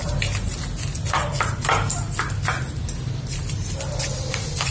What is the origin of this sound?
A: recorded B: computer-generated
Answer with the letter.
A